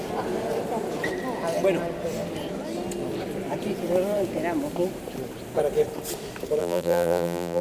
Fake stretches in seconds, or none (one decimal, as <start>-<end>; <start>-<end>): 6.6-7.6